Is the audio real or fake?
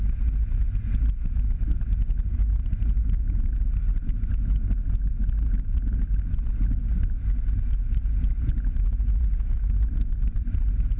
real